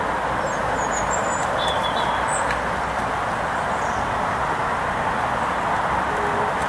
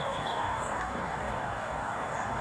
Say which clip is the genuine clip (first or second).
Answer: first